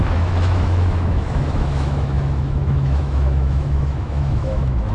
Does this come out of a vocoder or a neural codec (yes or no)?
yes